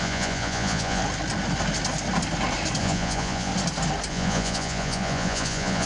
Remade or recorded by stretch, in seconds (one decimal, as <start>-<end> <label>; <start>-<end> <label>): 0.0-1.0 remade; 1.0-2.8 recorded; 2.8-3.5 remade; 3.5-4.1 recorded; 4.1-5.9 remade